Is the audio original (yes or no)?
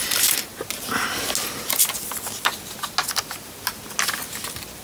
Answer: yes